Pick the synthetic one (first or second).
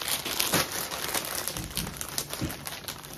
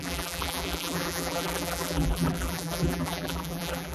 second